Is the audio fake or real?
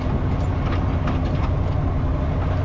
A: real